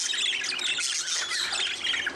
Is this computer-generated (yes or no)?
no